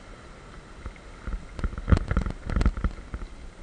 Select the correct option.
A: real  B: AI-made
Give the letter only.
A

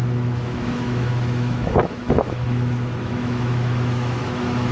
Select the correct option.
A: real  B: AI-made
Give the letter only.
B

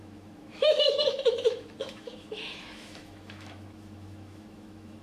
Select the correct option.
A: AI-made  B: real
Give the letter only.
A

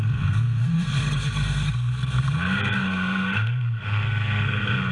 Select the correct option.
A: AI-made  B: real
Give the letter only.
A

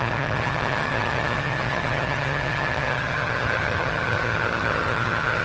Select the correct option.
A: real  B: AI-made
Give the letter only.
B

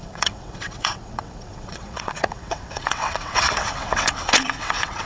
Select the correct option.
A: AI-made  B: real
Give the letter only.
A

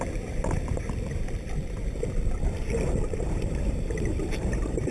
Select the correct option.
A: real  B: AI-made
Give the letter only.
B